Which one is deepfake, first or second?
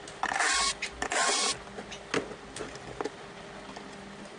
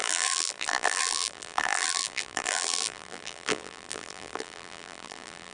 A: second